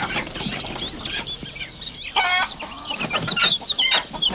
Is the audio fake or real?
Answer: real